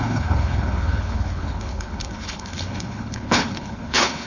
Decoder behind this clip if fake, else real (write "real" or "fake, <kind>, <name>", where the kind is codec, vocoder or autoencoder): fake, codec, HILCodec